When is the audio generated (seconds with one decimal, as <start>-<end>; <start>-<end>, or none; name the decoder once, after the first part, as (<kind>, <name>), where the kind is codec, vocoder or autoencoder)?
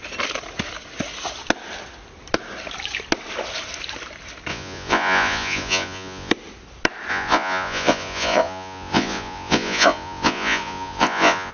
4.5-6.3 (vocoder, Vocos); 7.1-11.5